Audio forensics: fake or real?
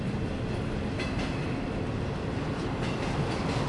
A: real